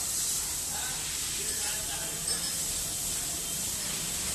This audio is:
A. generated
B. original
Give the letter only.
B